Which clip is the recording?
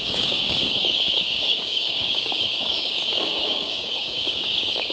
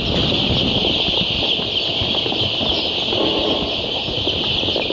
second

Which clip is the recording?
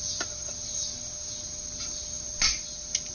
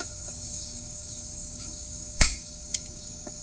first